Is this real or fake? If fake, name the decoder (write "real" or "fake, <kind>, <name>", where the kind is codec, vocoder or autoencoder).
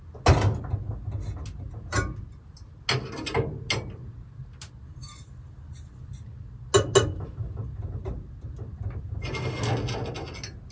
real